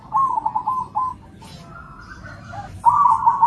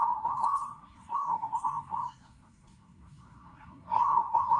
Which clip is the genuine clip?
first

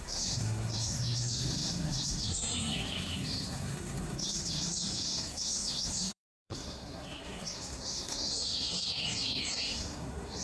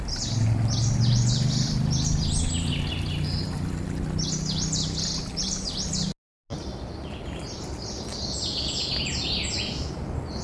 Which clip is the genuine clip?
second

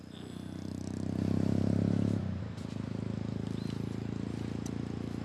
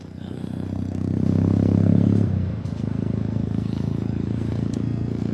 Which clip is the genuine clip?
first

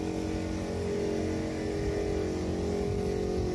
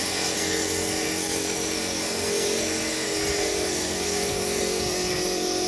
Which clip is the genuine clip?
first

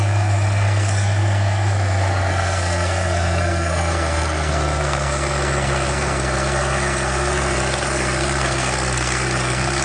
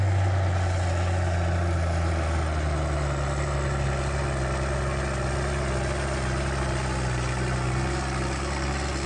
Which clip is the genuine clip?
second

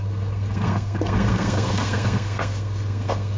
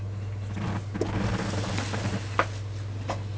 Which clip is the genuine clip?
second